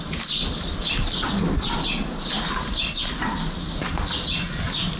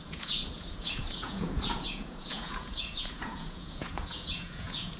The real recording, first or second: first